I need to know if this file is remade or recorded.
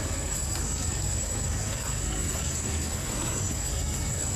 remade